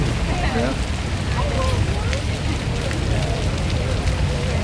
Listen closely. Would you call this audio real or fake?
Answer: real